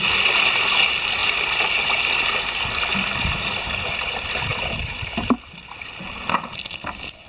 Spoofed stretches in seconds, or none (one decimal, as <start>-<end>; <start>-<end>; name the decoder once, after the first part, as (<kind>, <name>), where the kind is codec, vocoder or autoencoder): none